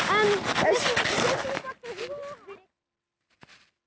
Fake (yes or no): no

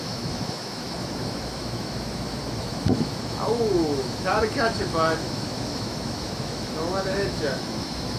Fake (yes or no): yes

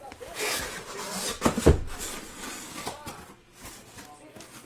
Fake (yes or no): no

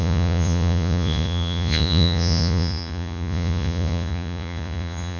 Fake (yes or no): yes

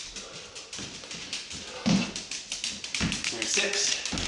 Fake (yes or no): no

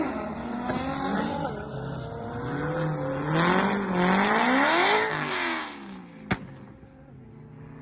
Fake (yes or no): no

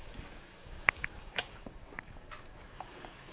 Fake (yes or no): yes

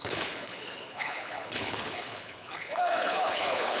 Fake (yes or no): yes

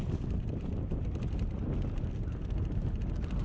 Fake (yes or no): no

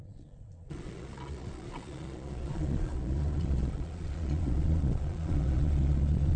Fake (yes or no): yes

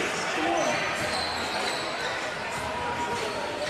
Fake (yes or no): no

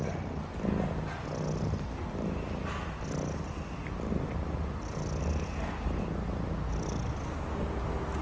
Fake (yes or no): no